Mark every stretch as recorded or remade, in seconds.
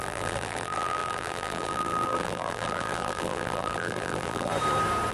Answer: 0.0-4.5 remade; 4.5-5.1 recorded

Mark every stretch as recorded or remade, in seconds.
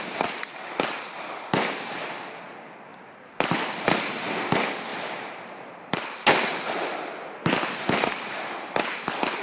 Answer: 0.0-2.9 recorded; 2.9-4.2 remade; 4.2-4.9 recorded; 4.9-8.4 remade; 8.4-9.4 recorded